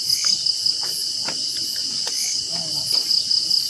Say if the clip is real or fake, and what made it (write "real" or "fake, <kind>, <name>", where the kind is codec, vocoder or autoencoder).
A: real